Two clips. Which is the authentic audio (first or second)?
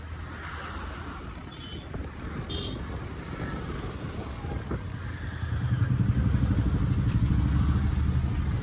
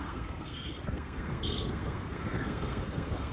first